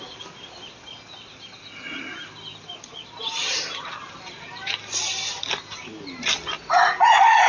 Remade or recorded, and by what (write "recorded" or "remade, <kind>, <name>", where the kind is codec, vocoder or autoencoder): recorded